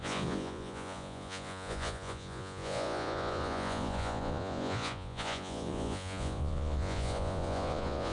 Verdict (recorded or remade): remade